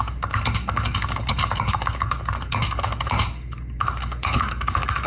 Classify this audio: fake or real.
fake